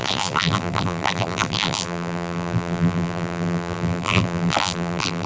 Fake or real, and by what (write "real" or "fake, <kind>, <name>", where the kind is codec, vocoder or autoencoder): fake, vocoder, BigVGAN v2